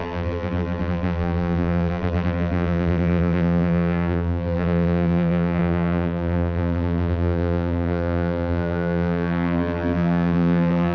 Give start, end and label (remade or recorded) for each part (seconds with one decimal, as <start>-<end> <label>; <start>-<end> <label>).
0.0-10.9 remade